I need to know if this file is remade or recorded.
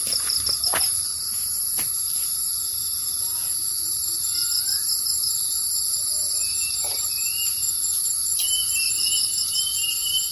remade